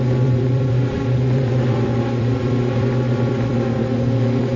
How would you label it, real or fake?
fake